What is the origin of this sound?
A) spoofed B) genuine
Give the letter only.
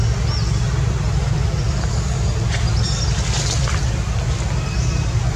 B